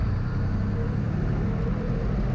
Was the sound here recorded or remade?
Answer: recorded